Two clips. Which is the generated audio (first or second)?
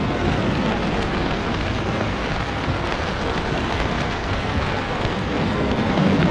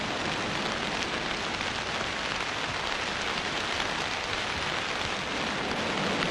first